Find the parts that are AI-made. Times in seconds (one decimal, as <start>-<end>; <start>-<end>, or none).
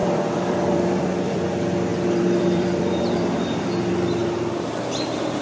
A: 0.0-1.0; 1.9-3.2